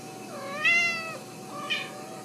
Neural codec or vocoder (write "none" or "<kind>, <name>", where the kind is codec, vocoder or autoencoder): none